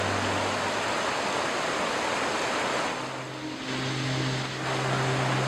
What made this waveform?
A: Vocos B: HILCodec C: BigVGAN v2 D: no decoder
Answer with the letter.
D